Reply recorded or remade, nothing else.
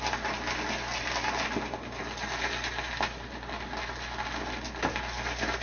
recorded